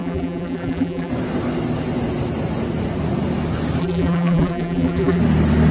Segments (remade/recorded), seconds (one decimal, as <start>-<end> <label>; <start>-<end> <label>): 0.0-1.1 remade; 1.1-3.8 recorded; 3.8-5.2 remade; 5.2-5.7 recorded